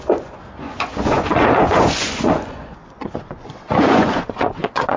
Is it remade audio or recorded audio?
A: remade